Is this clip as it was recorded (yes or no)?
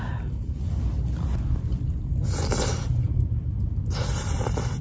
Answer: yes